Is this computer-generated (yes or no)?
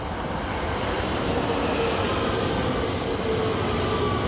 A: no